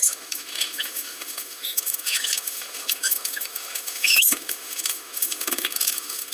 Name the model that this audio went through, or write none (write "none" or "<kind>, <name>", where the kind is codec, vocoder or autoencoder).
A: autoencoder, DAC-VAE